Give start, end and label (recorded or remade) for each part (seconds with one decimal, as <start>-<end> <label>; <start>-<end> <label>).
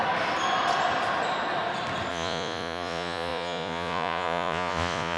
0.0-2.1 recorded; 2.1-5.2 remade